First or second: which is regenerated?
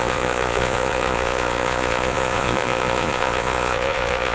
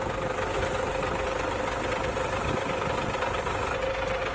first